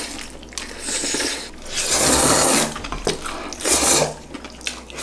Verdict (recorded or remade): recorded